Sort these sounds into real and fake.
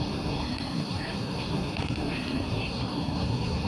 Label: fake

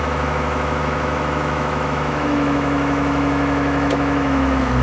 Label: fake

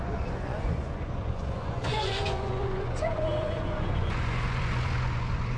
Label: fake